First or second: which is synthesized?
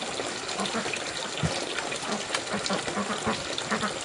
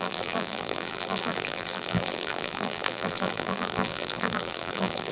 second